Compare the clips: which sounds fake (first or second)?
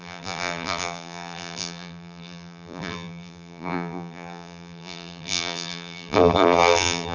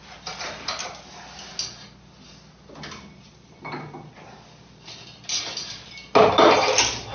first